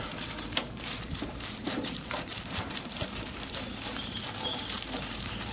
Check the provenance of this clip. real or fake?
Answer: fake